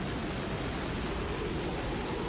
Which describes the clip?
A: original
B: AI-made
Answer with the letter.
A